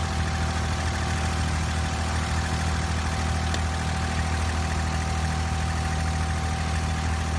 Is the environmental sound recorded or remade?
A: recorded